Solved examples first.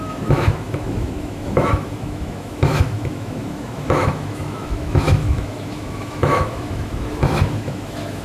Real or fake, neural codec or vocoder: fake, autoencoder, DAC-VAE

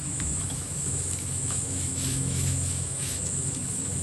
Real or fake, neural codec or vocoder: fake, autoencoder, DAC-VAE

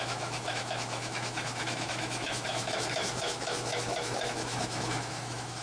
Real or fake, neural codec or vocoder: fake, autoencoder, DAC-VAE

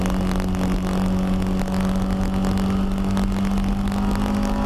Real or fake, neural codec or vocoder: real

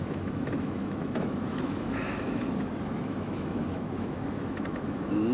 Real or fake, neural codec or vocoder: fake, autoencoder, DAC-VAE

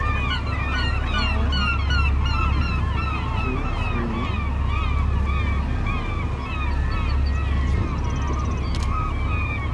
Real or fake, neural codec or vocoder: real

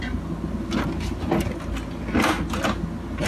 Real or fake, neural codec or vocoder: real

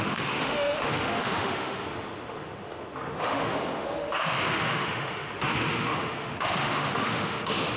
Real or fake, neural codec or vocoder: fake, autoencoder, DAC-VAE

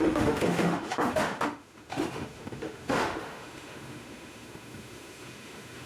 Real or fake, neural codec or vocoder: fake, autoencoder, DAC-VAE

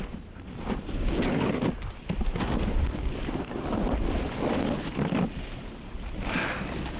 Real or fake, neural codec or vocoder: real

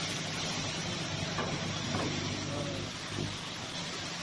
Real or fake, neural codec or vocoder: real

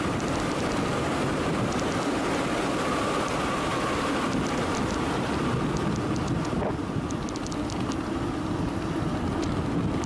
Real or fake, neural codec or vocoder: real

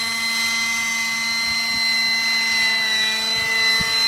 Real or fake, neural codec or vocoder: real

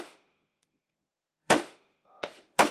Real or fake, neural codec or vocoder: fake, autoencoder, DAC-VAE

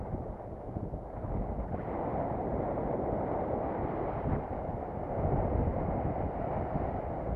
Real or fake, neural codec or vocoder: real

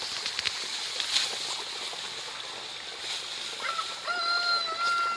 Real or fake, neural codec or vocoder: real